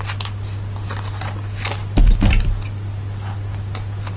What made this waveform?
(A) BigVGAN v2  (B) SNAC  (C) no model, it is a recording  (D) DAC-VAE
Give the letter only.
C